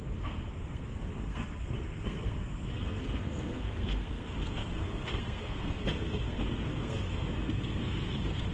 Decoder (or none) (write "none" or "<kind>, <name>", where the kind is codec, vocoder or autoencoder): codec, SNAC